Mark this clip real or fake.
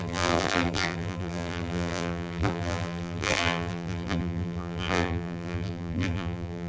fake